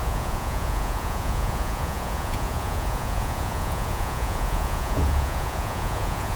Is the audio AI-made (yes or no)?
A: yes